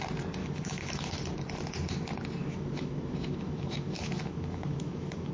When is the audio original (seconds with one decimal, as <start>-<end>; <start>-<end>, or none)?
0.0-0.4; 1.2-2.4